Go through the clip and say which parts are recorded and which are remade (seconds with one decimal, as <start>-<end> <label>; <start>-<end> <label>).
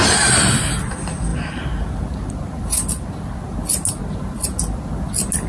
0.0-5.5 recorded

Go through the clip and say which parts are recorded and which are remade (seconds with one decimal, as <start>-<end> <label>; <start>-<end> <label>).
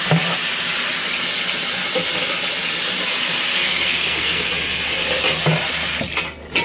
0.0-3.5 recorded; 3.5-4.5 remade; 4.5-6.6 recorded